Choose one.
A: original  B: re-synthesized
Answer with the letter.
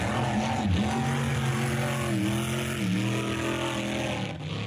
A